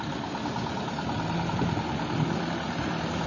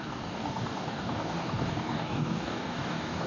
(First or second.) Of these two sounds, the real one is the first